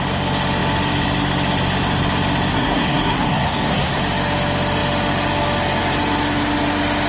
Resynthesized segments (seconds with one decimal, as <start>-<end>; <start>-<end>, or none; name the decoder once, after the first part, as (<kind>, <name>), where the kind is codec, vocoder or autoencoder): 2.5-4.0 (codec, SNAC)